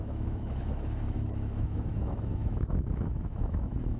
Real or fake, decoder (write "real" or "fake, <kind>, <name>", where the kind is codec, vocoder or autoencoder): fake, autoencoder, DAC-VAE